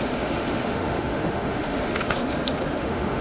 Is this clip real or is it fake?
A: fake